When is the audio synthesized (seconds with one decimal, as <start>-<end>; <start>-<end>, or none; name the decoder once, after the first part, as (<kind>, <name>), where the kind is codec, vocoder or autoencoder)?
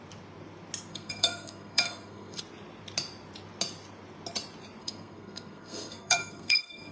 0.9-2.4 (codec, SNAC); 4.8-6.9